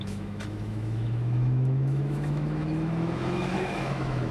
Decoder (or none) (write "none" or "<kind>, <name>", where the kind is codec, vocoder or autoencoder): autoencoder, DAC-VAE